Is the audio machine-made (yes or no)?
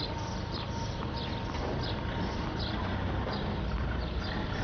no